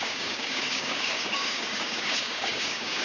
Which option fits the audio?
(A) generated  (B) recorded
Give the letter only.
A